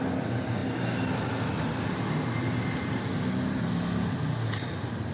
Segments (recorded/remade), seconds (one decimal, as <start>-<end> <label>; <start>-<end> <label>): 0.0-5.1 recorded